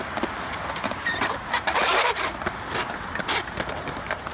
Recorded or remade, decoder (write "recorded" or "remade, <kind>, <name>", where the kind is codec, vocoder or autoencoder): recorded